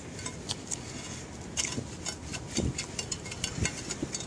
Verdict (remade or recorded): recorded